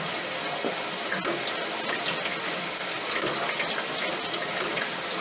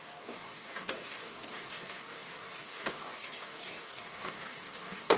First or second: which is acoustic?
first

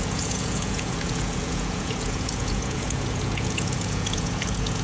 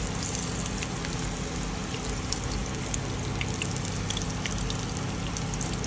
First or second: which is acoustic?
second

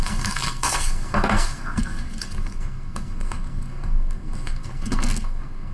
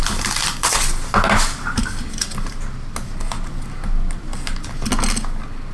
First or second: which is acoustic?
second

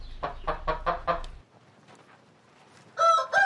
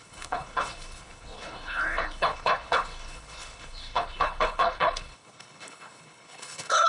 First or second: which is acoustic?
first